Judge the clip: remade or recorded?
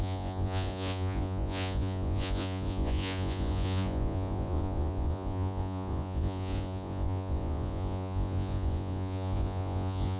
remade